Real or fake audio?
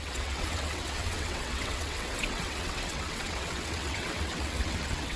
fake